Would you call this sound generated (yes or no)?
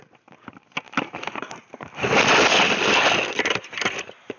no